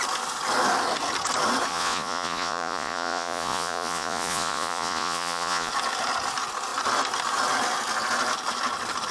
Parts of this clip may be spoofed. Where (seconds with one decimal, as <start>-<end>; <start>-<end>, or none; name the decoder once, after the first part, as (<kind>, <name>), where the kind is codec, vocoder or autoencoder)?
1.7-5.7 (vocoder, Vocos)